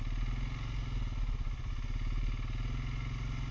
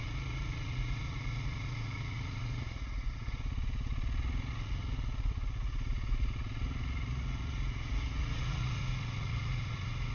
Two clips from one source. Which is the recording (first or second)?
first